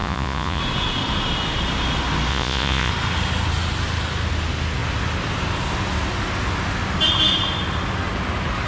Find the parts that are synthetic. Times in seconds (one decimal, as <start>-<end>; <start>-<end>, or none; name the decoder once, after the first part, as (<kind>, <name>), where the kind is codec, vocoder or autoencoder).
0.0-0.6 (vocoder, Vocos); 2.3-2.9